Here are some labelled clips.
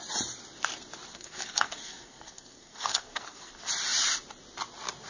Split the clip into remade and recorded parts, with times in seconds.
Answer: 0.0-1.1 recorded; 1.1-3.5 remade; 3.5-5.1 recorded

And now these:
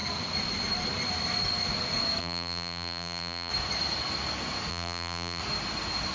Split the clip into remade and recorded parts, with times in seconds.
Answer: 0.0-2.2 recorded; 2.2-3.5 remade; 3.5-4.7 recorded; 4.7-5.4 remade; 5.4-6.1 recorded

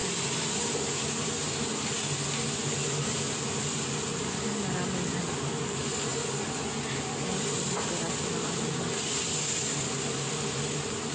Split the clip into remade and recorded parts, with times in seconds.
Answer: 0.0-11.1 recorded

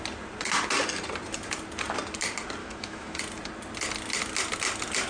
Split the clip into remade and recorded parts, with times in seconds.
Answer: 0.0-2.6 recorded; 2.6-3.2 remade; 3.2-5.1 recorded